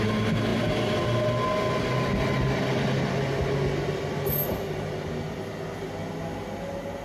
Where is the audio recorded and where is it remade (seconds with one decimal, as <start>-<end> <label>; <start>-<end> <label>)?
0.0-7.0 recorded